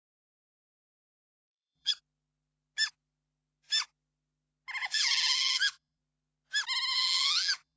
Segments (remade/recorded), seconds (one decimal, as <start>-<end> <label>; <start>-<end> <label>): 0.0-1.4 recorded; 1.4-1.9 remade; 1.9-4.8 recorded; 4.8-6.0 remade; 6.0-6.9 recorded; 6.9-7.8 remade